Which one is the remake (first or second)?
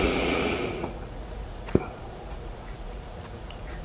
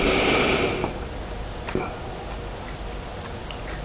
first